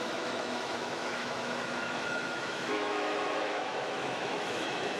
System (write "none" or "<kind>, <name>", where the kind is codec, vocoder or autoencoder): autoencoder, DAC-VAE